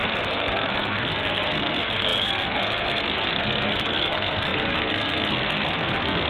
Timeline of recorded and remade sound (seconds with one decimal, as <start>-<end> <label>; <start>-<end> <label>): 0.0-6.3 remade